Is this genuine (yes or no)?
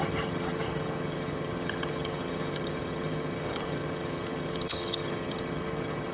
no